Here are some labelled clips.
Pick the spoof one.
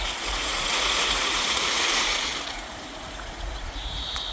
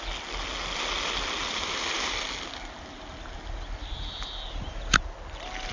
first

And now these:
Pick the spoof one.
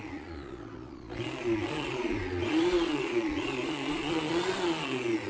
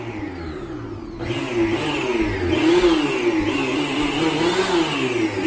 first